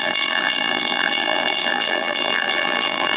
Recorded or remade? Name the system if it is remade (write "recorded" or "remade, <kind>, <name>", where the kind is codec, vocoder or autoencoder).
remade, vocoder, BigVGAN v2